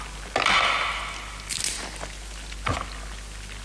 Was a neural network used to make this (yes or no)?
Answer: no